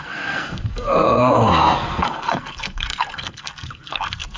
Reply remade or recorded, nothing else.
remade